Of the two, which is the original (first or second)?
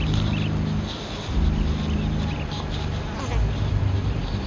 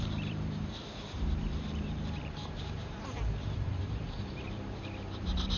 first